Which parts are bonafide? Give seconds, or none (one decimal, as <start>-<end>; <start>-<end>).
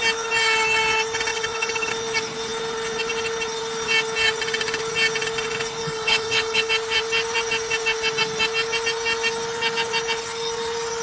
0.0-1.3; 1.9-5.8; 6.7-11.0